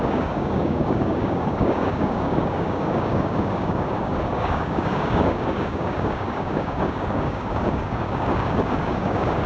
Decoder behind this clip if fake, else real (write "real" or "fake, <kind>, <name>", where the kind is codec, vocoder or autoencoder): fake, codec, DAC